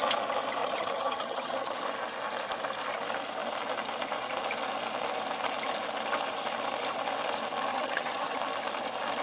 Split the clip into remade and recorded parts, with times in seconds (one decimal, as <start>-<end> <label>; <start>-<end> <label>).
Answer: 0.0-0.6 recorded; 0.6-1.8 remade; 1.8-7.7 recorded; 7.7-8.4 remade; 8.4-9.2 recorded

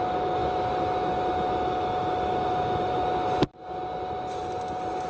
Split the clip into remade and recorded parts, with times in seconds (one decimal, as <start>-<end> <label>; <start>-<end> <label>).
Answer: 0.0-5.1 recorded

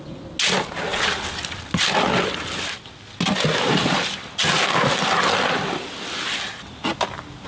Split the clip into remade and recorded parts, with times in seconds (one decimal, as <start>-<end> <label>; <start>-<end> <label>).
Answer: 0.0-7.5 recorded

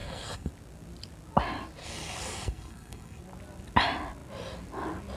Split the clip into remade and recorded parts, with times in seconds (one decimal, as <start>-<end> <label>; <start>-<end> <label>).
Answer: 0.0-0.5 remade; 0.5-1.8 recorded; 1.8-3.2 remade; 3.2-5.2 recorded

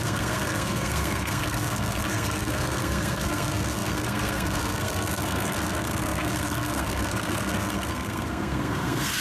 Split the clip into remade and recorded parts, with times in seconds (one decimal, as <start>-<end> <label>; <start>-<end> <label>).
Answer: 0.0-9.2 remade

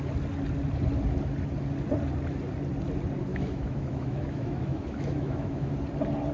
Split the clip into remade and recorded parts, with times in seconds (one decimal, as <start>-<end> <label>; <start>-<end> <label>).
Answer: 0.0-3.3 recorded; 3.3-5.7 remade; 5.7-6.3 recorded

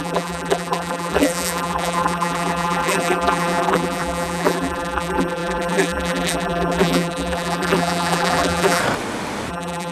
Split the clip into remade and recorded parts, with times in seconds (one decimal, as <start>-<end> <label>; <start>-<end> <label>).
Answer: 0.0-8.8 remade; 8.8-9.5 recorded; 9.5-9.9 remade